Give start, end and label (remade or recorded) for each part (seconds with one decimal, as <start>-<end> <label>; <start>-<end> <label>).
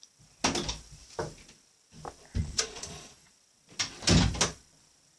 0.0-2.4 recorded; 2.4-3.3 remade; 3.3-5.2 recorded